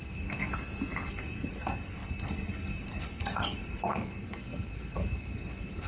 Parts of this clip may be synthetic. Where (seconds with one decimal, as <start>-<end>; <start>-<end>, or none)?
0.0-0.5; 1.1-5.9

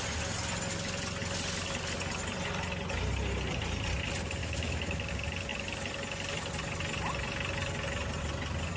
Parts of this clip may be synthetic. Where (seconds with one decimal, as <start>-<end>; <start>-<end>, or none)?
4.4-5.1

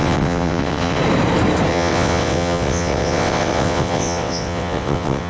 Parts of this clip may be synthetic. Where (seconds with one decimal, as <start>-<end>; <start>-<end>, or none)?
0.0-1.0; 1.7-5.3

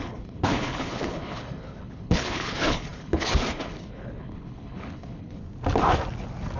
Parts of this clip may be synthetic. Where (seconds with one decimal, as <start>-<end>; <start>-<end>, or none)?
0.0-5.4

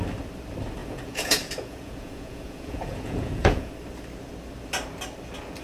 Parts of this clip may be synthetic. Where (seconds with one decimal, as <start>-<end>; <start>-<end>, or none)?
0.8-3.7